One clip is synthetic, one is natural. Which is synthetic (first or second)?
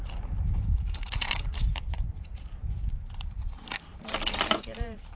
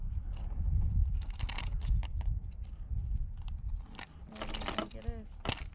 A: first